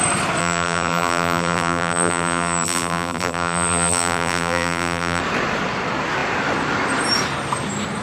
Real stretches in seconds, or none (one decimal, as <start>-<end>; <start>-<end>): 0.0-0.4; 5.2-8.0